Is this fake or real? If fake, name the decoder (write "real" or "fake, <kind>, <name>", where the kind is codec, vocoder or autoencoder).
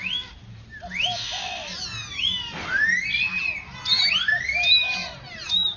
real